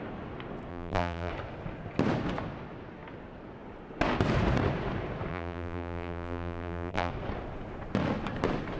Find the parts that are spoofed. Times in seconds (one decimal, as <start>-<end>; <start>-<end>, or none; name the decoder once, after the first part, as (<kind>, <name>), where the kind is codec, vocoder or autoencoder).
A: 0.7-1.3 (vocoder, BigVGAN v2); 5.3-7.1